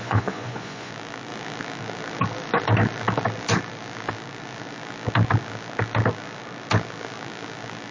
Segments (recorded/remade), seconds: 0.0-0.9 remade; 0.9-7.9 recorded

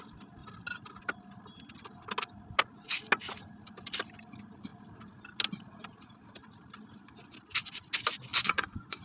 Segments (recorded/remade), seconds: 0.0-8.3 recorded; 8.3-9.0 remade

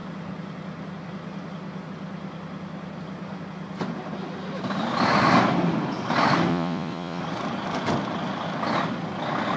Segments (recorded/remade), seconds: 0.0-6.5 recorded; 6.5-7.2 remade; 7.2-9.6 recorded

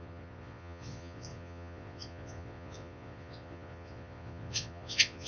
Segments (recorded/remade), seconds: 0.0-5.3 remade

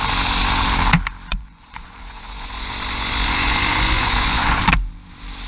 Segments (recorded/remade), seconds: 0.0-1.3 recorded; 1.3-4.6 remade; 4.6-5.5 recorded

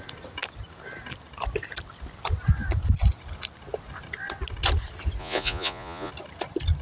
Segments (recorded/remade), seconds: 0.0-5.2 recorded; 5.2-6.1 remade; 6.1-6.8 recorded

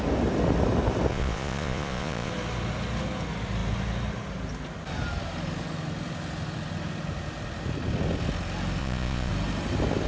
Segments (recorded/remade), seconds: 0.0-1.1 recorded; 1.1-2.3 remade; 2.3-8.8 recorded; 8.8-9.3 remade; 9.3-10.1 recorded

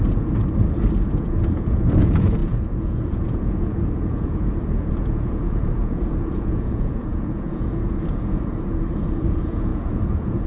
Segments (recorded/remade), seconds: 0.0-0.4 remade; 0.4-1.1 recorded; 1.1-10.5 remade